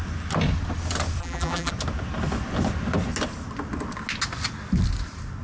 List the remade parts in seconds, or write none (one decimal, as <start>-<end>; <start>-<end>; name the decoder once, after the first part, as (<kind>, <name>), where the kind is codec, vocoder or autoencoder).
1.2-1.7 (vocoder, BigVGAN v2)